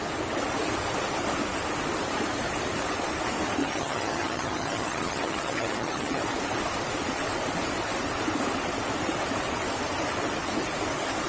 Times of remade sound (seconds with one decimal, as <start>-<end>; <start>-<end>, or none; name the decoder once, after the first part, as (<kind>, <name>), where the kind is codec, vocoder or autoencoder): 3.6-6.2 (vocoder, HiFi-GAN)